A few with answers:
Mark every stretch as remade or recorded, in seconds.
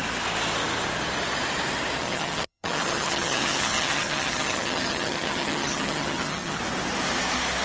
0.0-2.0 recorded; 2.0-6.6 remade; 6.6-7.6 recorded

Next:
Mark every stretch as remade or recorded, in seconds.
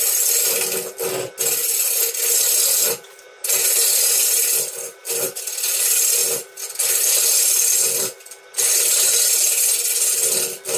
0.0-10.8 recorded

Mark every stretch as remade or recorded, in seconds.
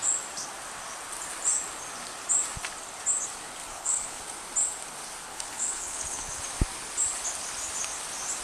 0.0-3.6 recorded; 3.6-4.2 remade; 4.2-5.3 recorded; 5.3-6.4 remade; 6.4-8.4 recorded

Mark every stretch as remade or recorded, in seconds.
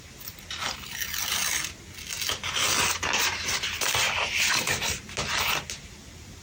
0.0-6.4 recorded